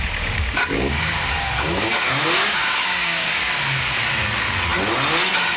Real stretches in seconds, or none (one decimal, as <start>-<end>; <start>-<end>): 3.4-5.6

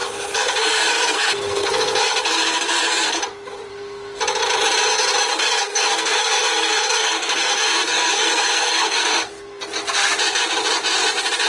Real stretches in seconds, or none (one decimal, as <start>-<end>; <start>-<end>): 3.2-3.7; 4.2-5.3; 9.6-11.5

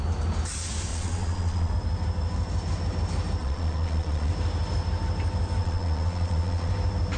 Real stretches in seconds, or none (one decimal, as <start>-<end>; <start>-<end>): 0.0-0.9; 1.7-3.4; 4.3-5.6; 6.7-7.2

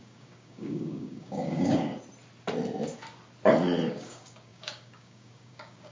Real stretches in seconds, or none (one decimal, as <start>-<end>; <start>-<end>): 1.9-3.9

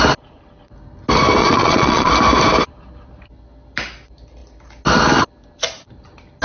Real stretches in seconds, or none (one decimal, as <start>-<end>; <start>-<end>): 0.0-1.4; 2.1-6.4

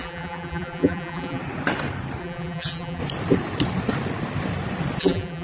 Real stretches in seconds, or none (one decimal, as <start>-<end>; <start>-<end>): 1.4-2.2; 3.0-5.0